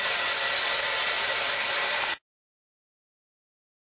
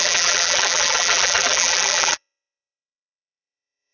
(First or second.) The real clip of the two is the first